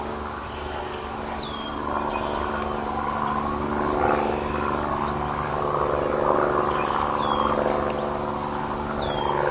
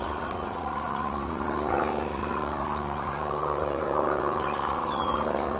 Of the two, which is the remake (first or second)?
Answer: second